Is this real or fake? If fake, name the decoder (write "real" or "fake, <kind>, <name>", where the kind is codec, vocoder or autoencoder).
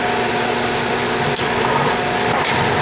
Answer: real